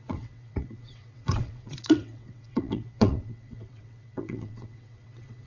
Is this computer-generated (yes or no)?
yes